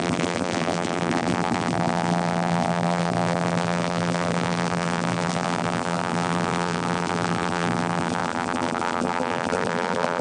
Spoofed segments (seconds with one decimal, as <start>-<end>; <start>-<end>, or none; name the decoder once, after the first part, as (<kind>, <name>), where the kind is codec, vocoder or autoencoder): 0.0-10.2 (vocoder, BigVGAN v2)